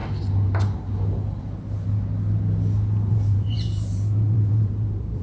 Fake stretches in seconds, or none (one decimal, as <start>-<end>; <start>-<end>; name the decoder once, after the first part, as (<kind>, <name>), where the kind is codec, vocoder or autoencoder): 3.1-5.2 (vocoder, BigVGAN v2)